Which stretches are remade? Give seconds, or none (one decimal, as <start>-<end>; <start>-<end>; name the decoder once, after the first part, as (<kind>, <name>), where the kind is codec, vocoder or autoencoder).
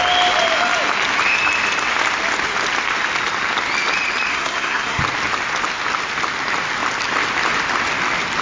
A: 4.3-5.0 (codec, SNAC)